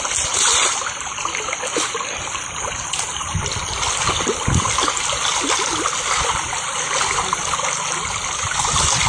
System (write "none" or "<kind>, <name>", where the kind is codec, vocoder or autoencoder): none